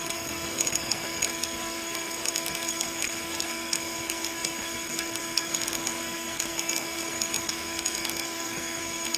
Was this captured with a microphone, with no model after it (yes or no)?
no